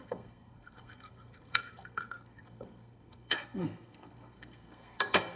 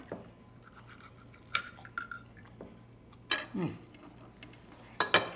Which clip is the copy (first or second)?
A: first